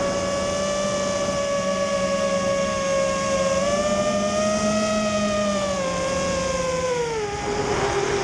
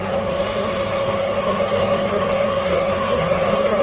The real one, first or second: first